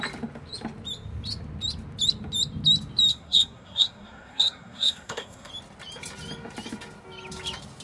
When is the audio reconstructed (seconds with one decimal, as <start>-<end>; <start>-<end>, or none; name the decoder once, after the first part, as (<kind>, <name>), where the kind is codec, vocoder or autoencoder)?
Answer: 3.1-5.5 (codec, SNAC)